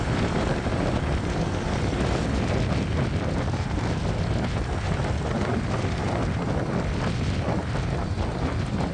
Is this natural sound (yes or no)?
yes